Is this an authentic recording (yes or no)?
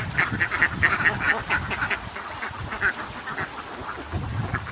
yes